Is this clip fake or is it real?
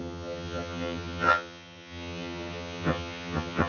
fake